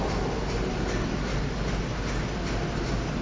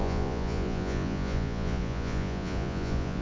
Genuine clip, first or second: first